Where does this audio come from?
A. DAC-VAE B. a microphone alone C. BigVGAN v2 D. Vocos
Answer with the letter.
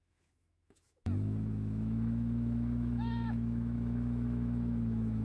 A